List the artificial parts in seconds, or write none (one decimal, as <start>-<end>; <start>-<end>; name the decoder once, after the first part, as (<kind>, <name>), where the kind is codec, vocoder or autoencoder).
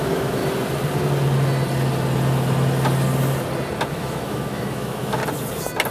0.0-0.4 (autoencoder, DAC-VAE); 3.9-5.2